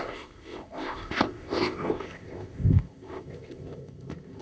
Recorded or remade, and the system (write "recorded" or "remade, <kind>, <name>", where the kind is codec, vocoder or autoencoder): remade, codec, ZipCodec